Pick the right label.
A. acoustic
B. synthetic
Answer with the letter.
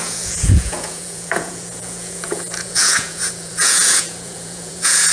B